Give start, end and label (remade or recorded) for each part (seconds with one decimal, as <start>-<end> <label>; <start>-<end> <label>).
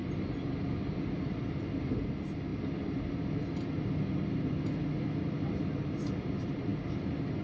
0.0-7.4 recorded